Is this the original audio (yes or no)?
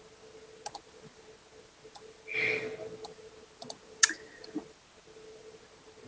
yes